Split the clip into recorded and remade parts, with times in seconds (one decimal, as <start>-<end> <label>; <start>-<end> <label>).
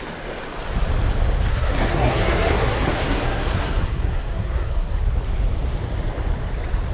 0.0-1.5 recorded; 1.5-5.0 remade; 5.0-6.9 recorded